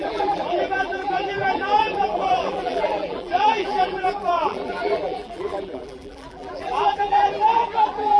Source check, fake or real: fake